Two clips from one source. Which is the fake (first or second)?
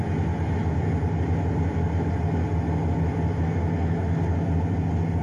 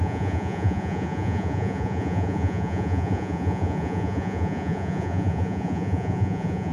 second